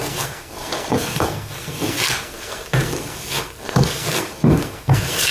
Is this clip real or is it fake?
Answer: fake